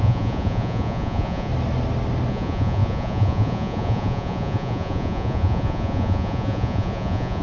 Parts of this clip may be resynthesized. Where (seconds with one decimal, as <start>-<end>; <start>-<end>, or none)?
0.0-1.5; 2.3-7.4